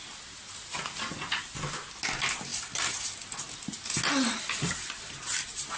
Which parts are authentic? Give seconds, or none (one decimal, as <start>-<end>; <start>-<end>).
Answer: 0.0-5.8

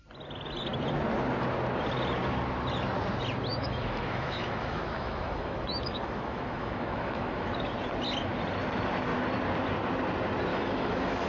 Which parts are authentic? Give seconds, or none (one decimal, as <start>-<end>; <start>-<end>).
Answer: 0.0-3.5; 7.7-10.5

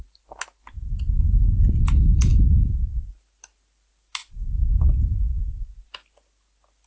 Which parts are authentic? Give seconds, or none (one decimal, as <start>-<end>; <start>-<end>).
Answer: 0.0-6.9

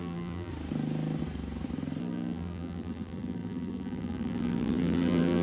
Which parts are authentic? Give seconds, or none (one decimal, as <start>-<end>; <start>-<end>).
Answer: 0.5-2.0